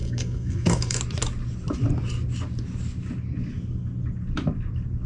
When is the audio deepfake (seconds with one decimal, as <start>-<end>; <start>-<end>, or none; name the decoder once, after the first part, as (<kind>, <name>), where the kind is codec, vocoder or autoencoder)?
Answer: 0.0-1.0 (codec, SNAC)